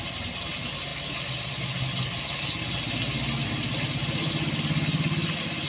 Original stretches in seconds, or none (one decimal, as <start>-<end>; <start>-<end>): 0.0-5.7